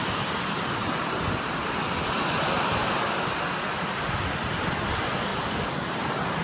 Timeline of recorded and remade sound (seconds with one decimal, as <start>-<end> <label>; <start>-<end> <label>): 0.0-6.4 recorded